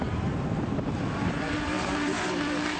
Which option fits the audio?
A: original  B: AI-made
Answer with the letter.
B